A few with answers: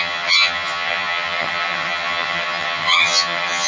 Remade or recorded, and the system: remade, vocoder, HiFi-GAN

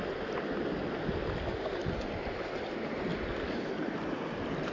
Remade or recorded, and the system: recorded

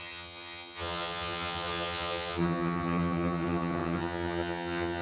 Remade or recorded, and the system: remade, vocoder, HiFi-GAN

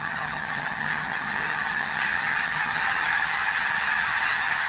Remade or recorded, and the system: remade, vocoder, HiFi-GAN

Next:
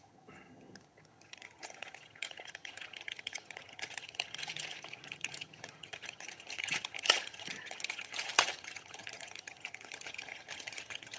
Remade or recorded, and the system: remade, vocoder, HiFi-GAN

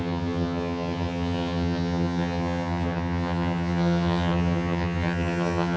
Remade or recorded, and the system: remade, vocoder, HiFi-GAN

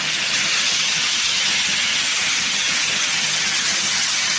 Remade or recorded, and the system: remade, vocoder, HiFi-GAN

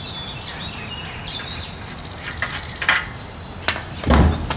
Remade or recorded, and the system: recorded